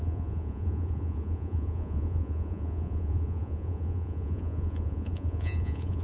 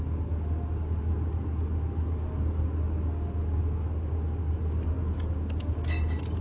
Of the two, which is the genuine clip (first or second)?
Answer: second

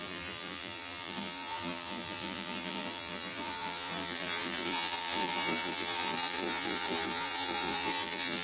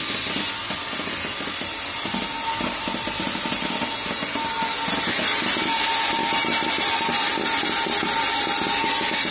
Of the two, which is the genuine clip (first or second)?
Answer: second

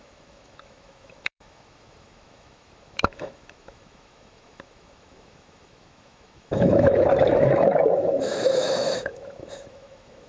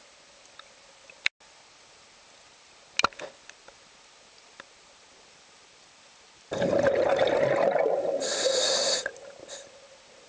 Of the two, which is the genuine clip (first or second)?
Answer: second